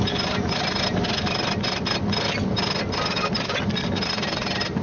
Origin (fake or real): real